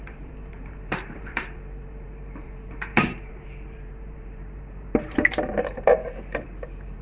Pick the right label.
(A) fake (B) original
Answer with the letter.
A